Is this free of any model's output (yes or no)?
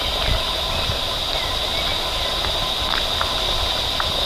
yes